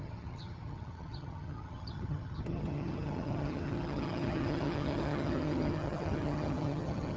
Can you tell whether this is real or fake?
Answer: fake